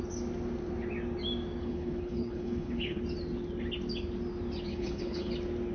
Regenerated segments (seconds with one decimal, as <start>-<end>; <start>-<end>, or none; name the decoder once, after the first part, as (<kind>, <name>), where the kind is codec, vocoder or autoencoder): 1.6-3.0 (codec, HILCodec); 4.7-5.3